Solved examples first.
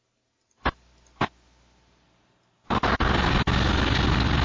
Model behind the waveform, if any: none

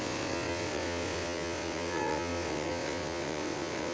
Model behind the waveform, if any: vocoder, WaveNeXt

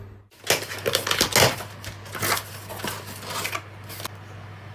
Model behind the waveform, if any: none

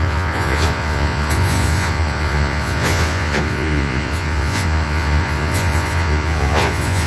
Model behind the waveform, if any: vocoder, Vocos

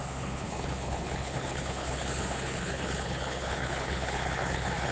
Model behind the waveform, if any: codec, HILCodec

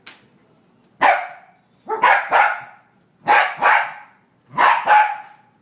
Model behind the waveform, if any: none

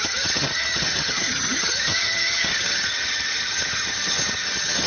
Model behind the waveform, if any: vocoder, HiFi-GAN